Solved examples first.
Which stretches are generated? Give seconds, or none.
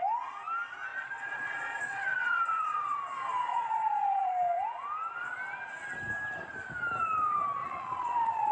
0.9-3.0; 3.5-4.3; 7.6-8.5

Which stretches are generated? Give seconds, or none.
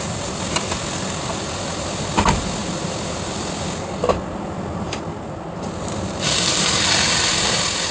none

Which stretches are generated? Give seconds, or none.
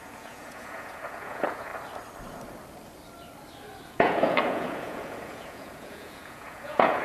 0.0-1.7; 3.9-7.0